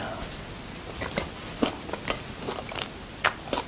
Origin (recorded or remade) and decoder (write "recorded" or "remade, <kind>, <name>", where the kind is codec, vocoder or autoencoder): recorded